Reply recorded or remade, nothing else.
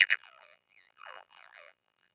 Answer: remade